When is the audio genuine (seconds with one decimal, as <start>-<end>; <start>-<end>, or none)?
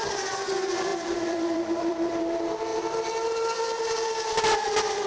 0.0-0.9; 2.2-5.1